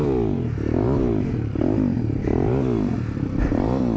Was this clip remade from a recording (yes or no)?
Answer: no